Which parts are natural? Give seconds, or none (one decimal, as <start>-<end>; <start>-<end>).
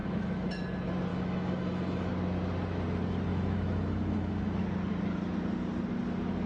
0.6-1.1; 2.1-3.3; 4.6-6.5